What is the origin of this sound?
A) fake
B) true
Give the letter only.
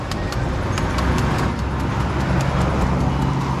B